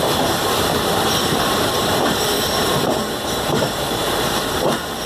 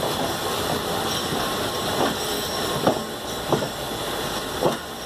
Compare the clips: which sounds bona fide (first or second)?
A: second